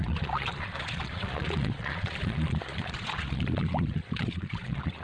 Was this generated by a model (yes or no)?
yes